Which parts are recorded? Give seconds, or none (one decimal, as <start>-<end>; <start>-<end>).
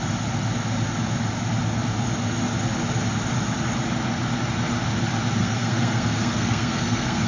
0.0-5.4